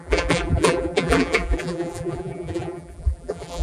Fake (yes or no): yes